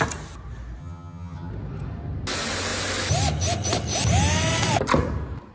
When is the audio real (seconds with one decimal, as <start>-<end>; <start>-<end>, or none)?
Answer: 0.0-0.8; 1.5-5.5